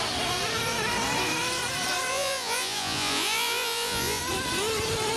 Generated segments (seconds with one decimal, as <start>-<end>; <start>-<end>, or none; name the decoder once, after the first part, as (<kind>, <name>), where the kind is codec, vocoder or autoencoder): 2.1-4.2 (vocoder, Vocos)